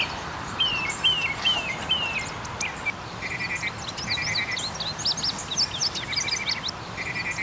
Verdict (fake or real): real